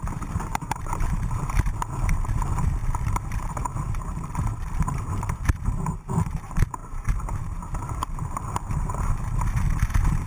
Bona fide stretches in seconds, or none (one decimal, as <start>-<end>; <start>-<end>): none